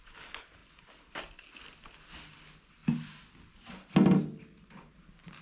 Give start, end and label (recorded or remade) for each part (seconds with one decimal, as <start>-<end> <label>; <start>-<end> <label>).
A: 0.0-5.4 recorded